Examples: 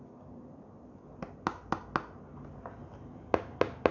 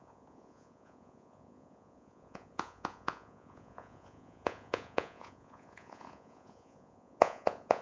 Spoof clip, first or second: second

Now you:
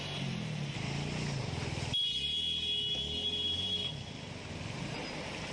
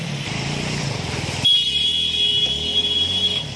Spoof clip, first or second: second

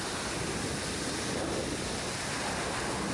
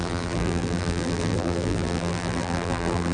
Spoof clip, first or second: second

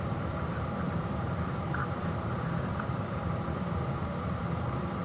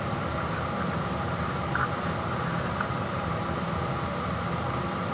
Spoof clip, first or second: first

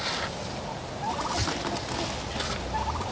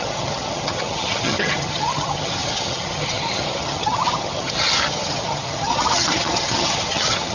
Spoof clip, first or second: second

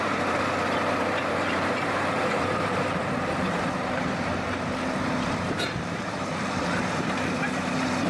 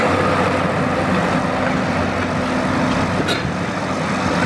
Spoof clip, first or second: first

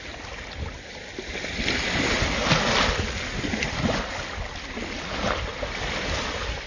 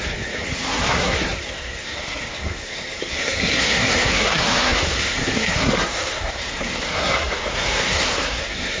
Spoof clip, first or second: second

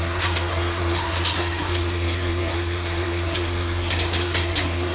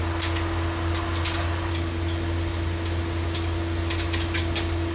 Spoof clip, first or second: first